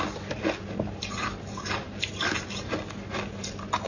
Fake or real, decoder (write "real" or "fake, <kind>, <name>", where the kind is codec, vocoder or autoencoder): real